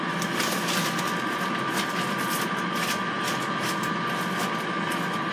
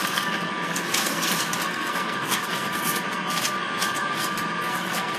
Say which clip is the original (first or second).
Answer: first